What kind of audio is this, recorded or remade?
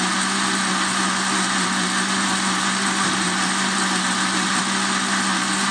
recorded